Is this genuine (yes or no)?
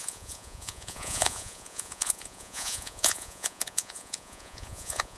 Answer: no